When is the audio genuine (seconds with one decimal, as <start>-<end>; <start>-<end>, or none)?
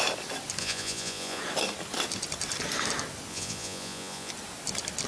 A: 0.0-0.6; 1.4-3.3; 4.3-5.1